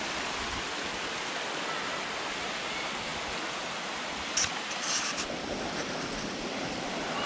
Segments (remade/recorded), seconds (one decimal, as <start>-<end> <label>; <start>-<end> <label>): 0.0-7.3 recorded